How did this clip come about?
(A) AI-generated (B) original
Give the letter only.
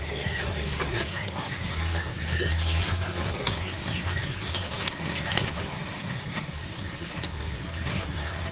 A